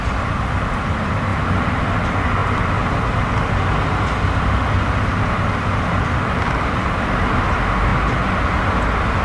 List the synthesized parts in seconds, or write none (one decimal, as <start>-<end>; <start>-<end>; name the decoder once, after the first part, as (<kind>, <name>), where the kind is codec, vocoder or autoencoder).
1.3-1.8 (vocoder, BigVGAN v2)